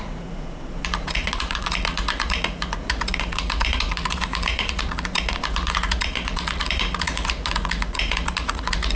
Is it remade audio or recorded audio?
remade